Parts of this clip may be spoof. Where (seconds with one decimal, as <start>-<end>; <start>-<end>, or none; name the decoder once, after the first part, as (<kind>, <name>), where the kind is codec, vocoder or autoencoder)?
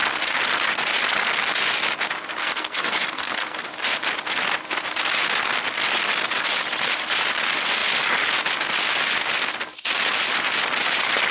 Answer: 2.4-3.7 (codec, SNAC)